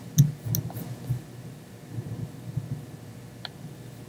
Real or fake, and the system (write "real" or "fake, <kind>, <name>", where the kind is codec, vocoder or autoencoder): real